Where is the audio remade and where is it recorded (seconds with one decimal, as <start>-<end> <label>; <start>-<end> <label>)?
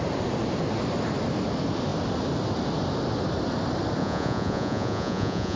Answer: 0.0-4.0 recorded; 4.0-5.6 remade